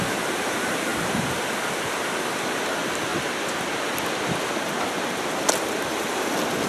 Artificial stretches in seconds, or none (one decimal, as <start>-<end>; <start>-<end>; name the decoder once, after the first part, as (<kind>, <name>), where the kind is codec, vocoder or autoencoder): 0.0-0.9 (vocoder, BigVGAN v2); 2.3-3.1